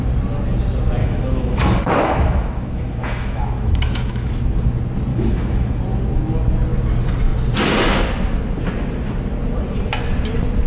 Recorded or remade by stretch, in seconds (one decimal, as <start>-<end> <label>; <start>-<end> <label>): 0.0-1.0 recorded; 1.0-4.3 remade; 4.3-5.1 recorded; 5.1-5.8 remade; 5.8-10.7 recorded